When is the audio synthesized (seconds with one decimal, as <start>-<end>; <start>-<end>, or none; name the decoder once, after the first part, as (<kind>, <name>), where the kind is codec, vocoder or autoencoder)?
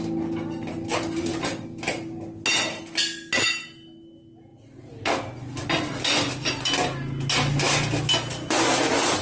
none